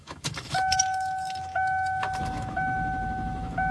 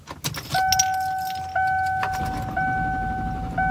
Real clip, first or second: second